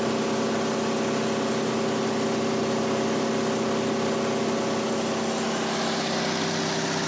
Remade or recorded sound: recorded